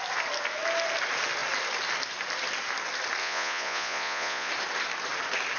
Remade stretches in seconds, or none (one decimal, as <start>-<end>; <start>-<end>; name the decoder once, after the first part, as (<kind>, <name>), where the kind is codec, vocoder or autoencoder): 3.2-4.5 (vocoder, Vocos)